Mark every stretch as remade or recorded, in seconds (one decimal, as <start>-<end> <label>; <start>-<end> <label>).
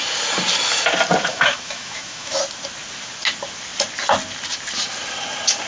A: 0.0-1.3 recorded; 1.3-2.4 remade; 2.4-5.7 recorded